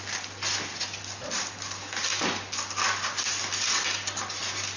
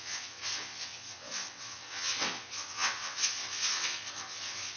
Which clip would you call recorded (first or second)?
first